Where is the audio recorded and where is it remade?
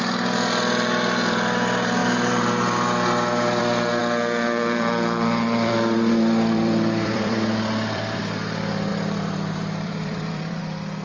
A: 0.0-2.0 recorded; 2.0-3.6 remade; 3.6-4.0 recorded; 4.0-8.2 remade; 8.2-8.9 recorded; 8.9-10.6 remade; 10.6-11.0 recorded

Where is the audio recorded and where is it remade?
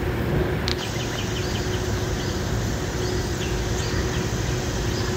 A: 0.0-5.2 recorded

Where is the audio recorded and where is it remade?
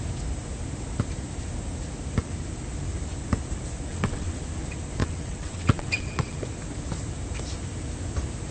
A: 0.0-3.9 recorded; 3.9-4.4 remade; 4.4-5.0 recorded; 5.0-6.4 remade; 6.4-8.5 recorded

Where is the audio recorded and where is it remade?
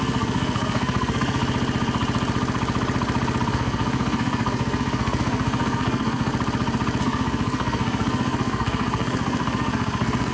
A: 0.0-1.4 remade; 1.4-3.5 recorded; 3.5-6.3 remade; 6.3-7.0 recorded; 7.0-10.3 remade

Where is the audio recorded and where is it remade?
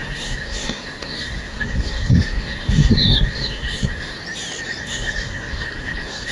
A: 0.0-4.2 remade; 4.2-4.8 recorded; 4.8-6.3 remade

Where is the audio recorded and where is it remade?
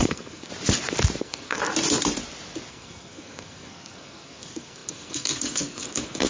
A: 0.0-0.5 remade; 0.5-1.2 recorded; 1.2-1.6 remade; 1.6-2.7 recorded; 2.7-6.3 remade